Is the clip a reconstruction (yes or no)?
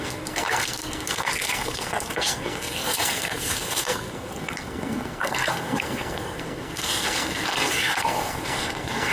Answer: yes